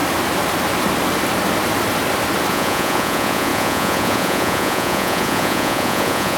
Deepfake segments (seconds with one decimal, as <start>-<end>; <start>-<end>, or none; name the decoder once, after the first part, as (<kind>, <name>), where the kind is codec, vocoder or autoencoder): 2.5-6.4 (vocoder, Vocos)